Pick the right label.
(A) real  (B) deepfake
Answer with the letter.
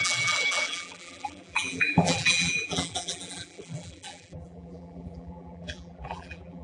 B